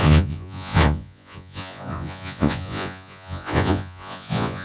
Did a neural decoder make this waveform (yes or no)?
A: yes